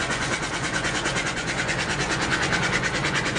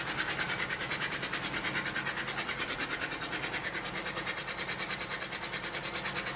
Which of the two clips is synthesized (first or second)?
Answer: first